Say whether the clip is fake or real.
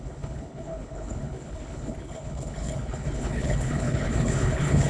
fake